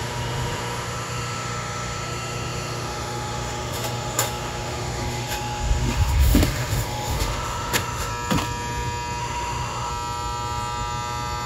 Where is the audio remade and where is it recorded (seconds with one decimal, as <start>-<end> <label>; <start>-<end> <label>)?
0.0-8.1 remade; 8.1-9.2 recorded; 9.2-9.9 remade; 9.9-11.5 recorded